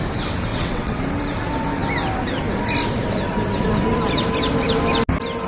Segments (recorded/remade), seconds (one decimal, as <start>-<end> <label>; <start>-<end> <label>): 0.0-0.5 recorded; 0.5-1.0 remade; 1.0-5.5 recorded